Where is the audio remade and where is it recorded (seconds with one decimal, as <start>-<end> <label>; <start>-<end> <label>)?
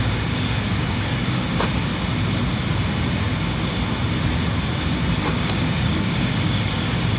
0.0-1.9 remade; 1.9-5.2 recorded; 5.2-7.2 remade